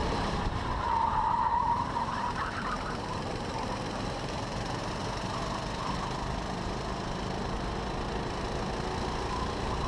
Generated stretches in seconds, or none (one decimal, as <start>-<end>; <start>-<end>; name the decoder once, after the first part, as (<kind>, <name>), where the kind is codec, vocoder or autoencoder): 0.0-4.9 (vocoder, BigVGAN v2)